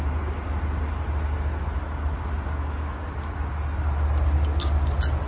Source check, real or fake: real